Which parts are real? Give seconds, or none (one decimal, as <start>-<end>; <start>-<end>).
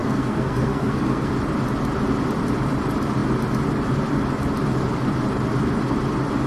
1.3-6.5